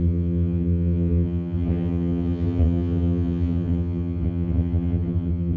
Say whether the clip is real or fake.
fake